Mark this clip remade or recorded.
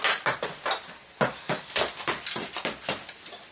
recorded